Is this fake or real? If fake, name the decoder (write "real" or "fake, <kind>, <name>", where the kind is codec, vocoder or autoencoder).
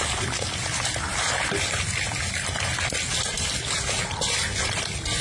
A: real